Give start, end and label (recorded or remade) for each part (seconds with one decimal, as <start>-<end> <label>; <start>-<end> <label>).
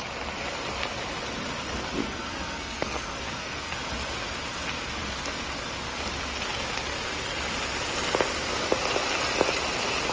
0.0-2.0 recorded; 2.0-3.8 remade; 3.8-10.1 recorded